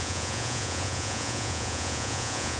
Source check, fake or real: fake